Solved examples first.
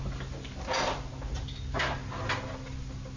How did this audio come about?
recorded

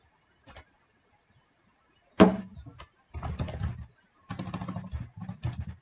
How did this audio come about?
recorded